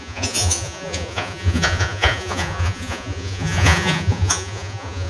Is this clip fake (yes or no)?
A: yes